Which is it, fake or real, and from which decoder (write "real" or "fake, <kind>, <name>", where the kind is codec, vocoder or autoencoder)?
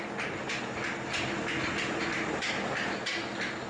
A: real